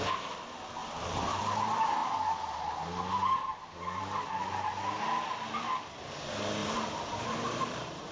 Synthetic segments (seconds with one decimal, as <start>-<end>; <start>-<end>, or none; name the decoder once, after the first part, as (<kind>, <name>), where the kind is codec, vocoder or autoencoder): 0.8-1.4 (vocoder, BigVGAN v2); 6.6-8.1